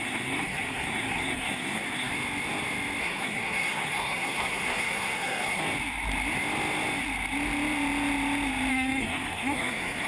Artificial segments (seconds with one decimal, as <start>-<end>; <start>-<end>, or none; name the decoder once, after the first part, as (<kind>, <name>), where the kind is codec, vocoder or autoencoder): 0.0-2.1 (codec, SNAC); 3.0-5.6; 8.7-10.1